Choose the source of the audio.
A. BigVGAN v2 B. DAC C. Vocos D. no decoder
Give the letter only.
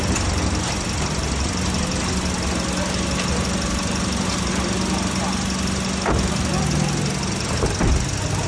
D